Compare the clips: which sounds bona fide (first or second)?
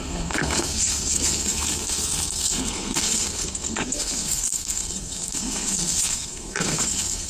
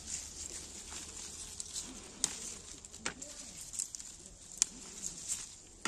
second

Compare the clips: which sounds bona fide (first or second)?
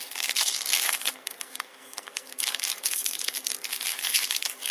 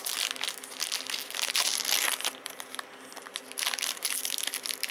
second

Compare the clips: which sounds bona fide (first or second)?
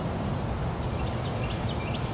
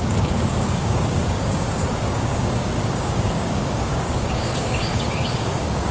first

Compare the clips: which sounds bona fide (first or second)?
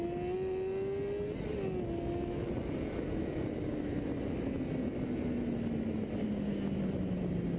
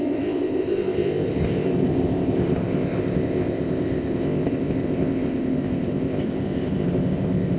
first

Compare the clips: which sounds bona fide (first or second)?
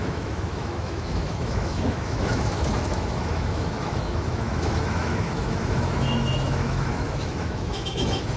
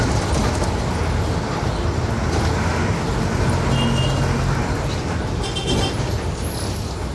second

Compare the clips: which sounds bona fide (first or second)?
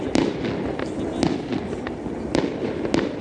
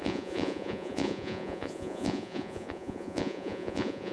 first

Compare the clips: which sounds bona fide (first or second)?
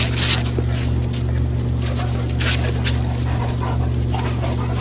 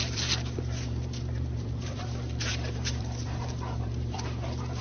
first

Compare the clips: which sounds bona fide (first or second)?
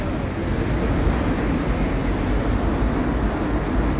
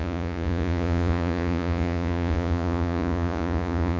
first